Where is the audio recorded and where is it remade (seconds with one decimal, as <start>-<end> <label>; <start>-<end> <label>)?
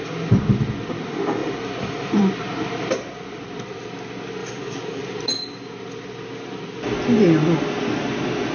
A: 0.0-1.4 recorded; 1.4-2.2 remade; 2.2-4.4 recorded; 4.4-5.1 remade; 5.1-8.5 recorded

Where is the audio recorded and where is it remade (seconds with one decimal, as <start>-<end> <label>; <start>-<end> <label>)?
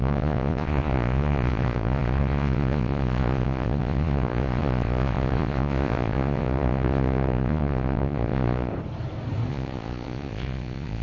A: 0.0-8.7 remade; 8.7-9.5 recorded; 9.5-11.0 remade